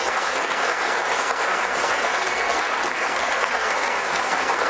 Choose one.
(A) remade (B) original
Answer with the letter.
A